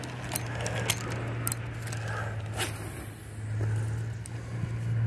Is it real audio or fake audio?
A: real